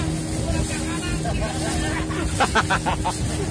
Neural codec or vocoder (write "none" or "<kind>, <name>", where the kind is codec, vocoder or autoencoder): none